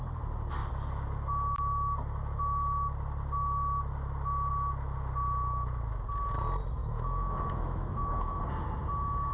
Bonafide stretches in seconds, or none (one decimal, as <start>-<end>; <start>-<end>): 0.0-6.8; 8.4-9.3